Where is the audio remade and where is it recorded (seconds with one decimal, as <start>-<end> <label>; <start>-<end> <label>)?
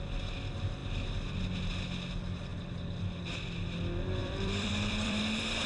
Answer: 0.0-4.2 recorded; 4.2-5.2 remade; 5.2-5.7 recorded